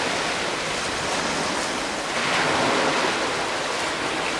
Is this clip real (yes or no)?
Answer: yes